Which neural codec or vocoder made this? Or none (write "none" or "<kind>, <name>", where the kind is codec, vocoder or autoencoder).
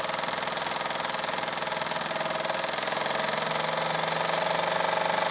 none